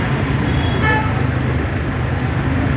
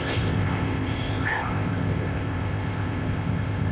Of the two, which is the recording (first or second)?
first